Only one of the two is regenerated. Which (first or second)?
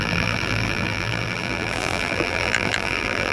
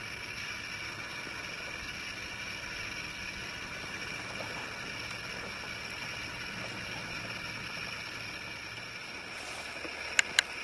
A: first